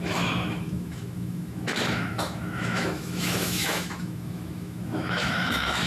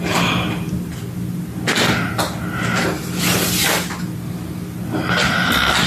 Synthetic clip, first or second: first